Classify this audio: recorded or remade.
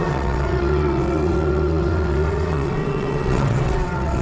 remade